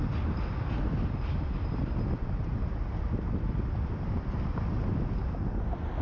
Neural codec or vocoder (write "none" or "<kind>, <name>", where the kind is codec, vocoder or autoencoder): none